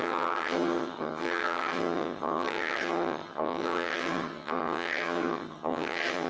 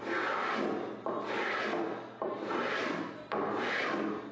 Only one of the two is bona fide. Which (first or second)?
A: second